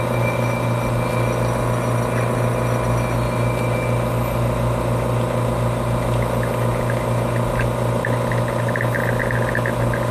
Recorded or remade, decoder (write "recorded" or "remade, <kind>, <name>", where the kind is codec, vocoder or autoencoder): recorded